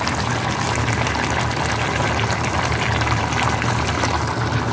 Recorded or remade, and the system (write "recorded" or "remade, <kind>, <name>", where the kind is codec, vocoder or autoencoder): recorded